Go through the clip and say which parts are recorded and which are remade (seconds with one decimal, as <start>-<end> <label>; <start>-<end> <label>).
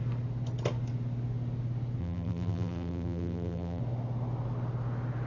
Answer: 0.0-2.0 recorded; 2.0-3.8 remade; 3.8-5.3 recorded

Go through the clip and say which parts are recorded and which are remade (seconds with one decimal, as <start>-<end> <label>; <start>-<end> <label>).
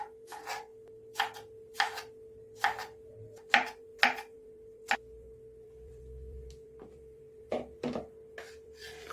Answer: 0.0-0.7 remade; 0.7-3.5 recorded; 3.5-9.1 remade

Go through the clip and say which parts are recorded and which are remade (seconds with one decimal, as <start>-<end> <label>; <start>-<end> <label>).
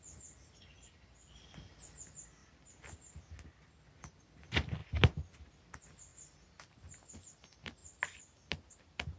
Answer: 0.0-9.2 recorded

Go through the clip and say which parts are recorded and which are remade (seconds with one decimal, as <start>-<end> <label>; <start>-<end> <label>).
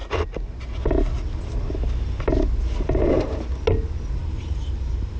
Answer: 0.0-4.2 recorded; 4.2-5.2 remade